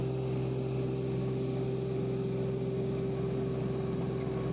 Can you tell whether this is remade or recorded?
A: recorded